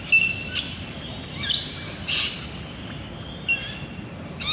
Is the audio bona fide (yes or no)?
yes